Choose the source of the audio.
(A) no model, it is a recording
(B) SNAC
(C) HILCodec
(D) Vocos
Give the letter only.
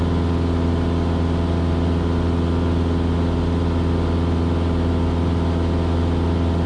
A